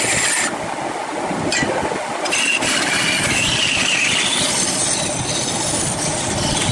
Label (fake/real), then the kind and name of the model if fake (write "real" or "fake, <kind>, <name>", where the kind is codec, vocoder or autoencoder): real